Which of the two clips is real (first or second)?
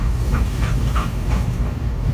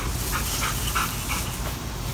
second